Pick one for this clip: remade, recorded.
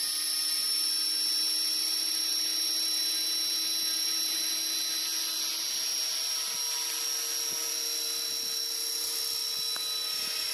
recorded